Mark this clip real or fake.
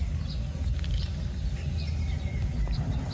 real